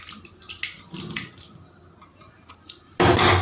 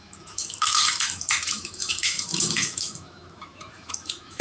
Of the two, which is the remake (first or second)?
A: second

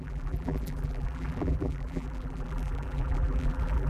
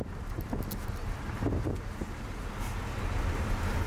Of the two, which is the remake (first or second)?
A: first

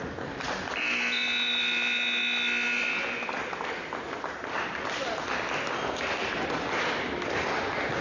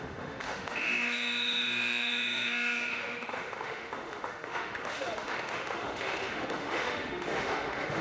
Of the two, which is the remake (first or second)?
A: second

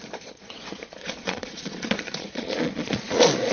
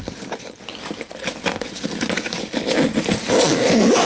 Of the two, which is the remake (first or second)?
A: first